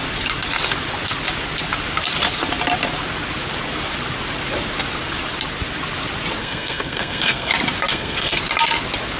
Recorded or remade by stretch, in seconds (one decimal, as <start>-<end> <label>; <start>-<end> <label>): 0.0-6.4 recorded; 6.4-7.5 remade; 7.5-7.9 recorded; 7.9-8.4 remade; 8.4-9.2 recorded